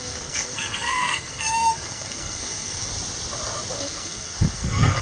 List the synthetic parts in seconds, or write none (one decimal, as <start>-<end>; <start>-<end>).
0.0-2.9; 3.7-5.0